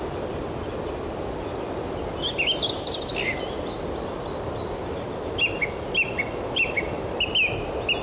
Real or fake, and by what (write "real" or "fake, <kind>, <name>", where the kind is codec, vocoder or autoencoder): real